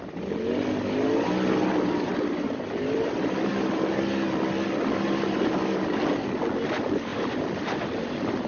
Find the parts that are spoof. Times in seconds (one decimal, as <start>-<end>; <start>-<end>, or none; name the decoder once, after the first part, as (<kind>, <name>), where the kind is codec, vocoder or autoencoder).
2.1-3.5 (vocoder, BigVGAN v2); 7.1-8.5

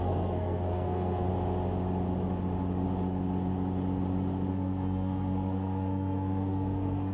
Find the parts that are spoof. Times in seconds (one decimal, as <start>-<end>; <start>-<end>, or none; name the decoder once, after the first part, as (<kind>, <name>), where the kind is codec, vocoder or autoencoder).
0.0-1.3 (codec, SNAC); 4.5-7.1